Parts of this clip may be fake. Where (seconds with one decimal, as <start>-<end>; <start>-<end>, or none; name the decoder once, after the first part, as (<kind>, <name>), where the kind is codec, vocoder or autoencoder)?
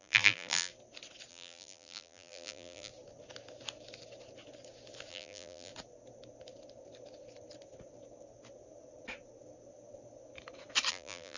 0.0-0.7 (vocoder, BigVGAN v2); 1.3-2.9; 5.1-5.7; 10.9-11.4